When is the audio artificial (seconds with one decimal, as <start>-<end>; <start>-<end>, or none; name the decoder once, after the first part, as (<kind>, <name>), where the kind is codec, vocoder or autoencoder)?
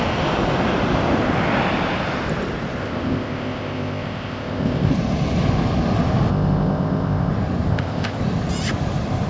2.8-4.9 (codec, ZipCodec); 6.3-7.3; 7.7-8.2